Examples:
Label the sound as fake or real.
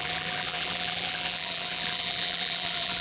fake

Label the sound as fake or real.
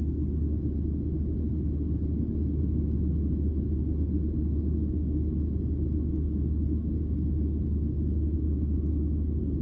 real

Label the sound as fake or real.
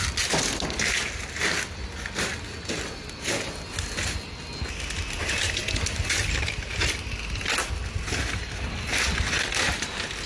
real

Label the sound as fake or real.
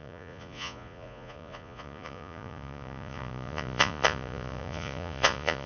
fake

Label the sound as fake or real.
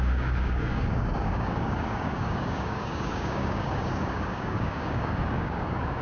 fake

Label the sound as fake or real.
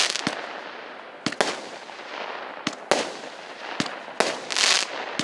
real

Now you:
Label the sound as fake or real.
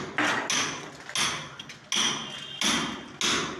real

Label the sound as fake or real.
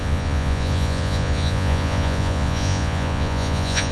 fake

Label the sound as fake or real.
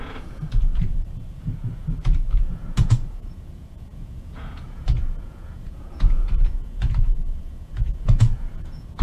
fake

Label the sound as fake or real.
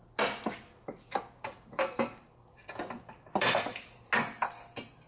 real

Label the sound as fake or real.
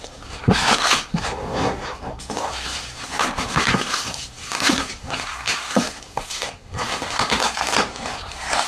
fake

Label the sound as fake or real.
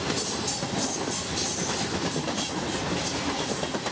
real